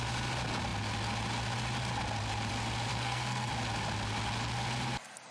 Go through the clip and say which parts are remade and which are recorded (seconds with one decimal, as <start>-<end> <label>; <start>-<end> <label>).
0.0-2.9 recorded; 2.9-3.5 remade; 3.5-5.3 recorded